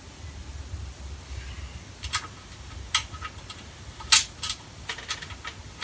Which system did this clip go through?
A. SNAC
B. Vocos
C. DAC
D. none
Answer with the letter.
D